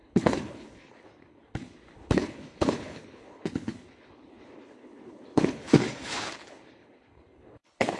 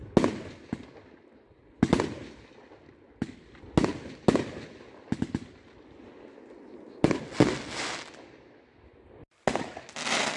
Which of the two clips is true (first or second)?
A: second